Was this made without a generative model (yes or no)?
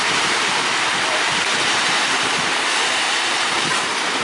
no